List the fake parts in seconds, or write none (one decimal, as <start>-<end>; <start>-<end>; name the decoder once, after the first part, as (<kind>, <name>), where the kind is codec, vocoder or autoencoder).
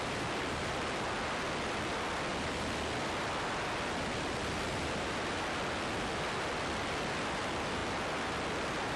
none